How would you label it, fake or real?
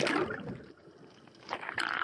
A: real